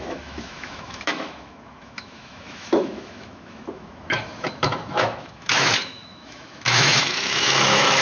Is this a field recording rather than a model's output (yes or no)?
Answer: no